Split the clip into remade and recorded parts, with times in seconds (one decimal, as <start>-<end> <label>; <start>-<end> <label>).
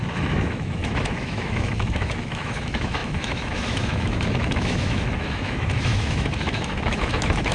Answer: 0.0-7.5 remade